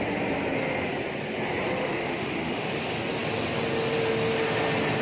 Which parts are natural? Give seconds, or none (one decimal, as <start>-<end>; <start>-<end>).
0.0-1.8; 2.7-5.0